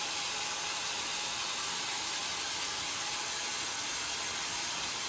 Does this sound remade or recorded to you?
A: recorded